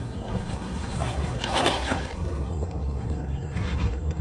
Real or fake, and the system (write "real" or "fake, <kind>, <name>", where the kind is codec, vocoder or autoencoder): fake, codec, SNAC